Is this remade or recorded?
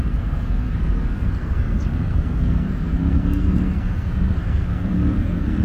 remade